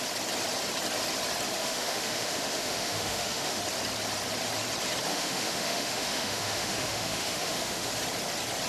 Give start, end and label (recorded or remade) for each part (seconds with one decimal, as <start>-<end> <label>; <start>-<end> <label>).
0.0-1.6 recorded; 1.6-3.6 remade; 3.6-5.1 recorded; 5.1-7.9 remade; 7.9-8.7 recorded

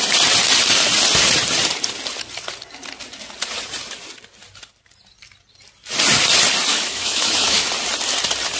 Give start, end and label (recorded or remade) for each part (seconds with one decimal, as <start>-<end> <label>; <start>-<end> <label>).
0.0-6.7 recorded; 6.7-7.7 remade; 7.7-8.6 recorded